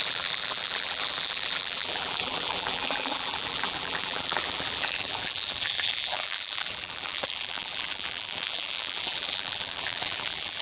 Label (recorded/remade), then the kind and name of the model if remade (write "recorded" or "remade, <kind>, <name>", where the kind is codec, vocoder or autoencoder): remade, vocoder, BigVGAN v2